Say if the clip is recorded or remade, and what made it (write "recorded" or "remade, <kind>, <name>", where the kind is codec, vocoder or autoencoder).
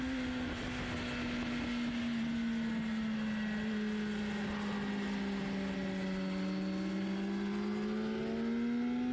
recorded